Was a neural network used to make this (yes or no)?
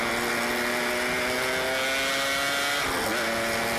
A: no